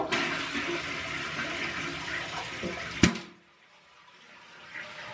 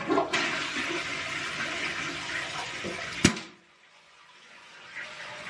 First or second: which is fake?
second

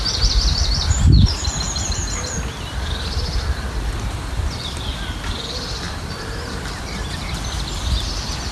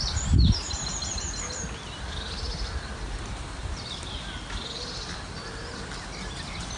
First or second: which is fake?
first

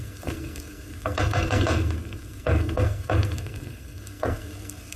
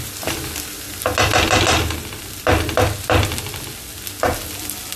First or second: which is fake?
first